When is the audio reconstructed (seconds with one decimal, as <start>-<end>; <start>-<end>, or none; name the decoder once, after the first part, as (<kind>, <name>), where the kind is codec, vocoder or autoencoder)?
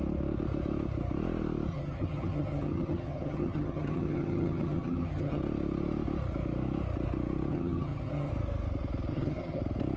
1.7-5.4 (vocoder, HiFi-GAN); 7.5-8.3; 9.1-9.6